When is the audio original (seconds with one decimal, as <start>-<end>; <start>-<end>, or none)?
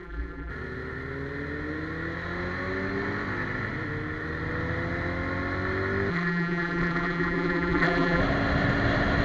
0.5-6.1; 8.2-9.2